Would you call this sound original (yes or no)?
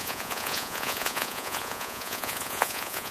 no